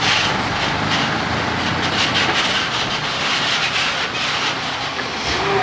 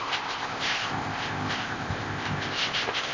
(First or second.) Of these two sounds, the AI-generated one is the second